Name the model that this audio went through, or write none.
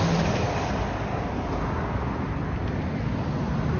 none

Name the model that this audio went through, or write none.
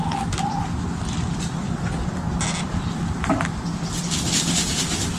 none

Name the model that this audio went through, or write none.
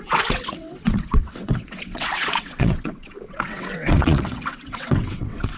vocoder, WaveNeXt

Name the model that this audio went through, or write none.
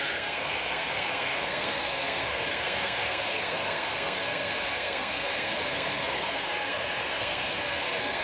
codec, SNAC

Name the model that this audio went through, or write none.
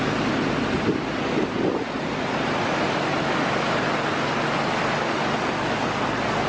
none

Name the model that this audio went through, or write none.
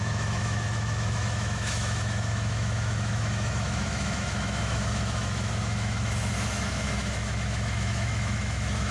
autoencoder, DAC-VAE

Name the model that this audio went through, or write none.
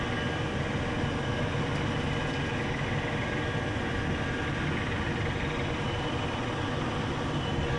none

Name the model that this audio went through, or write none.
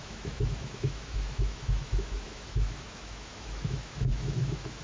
autoencoder, DAC-VAE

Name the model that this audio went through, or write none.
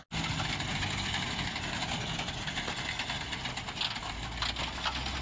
none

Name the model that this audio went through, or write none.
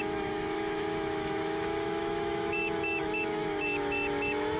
autoencoder, DAC-VAE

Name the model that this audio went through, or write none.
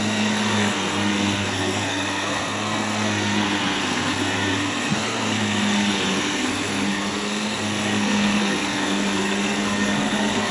codec, SNAC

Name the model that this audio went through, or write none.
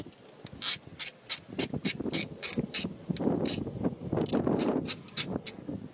none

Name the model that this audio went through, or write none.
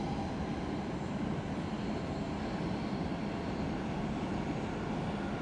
none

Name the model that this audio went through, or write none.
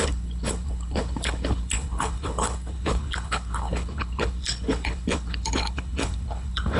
codec, HILCodec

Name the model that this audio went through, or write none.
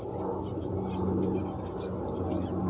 none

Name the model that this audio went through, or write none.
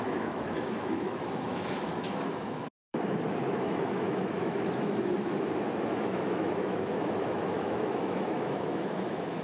autoencoder, DAC-VAE